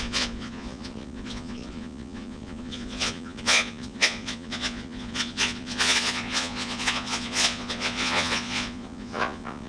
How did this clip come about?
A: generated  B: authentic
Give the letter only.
A